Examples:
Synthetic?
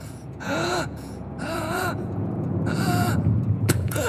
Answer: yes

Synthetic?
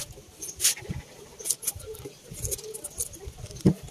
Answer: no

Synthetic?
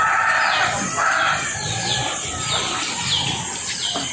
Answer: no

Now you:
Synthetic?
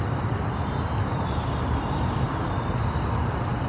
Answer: no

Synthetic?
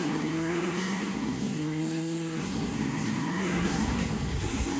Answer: yes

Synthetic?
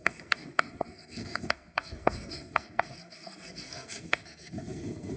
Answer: yes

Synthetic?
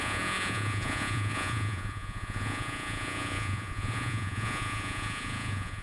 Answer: yes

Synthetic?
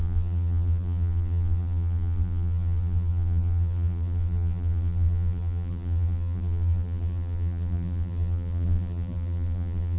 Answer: yes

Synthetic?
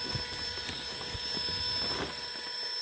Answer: no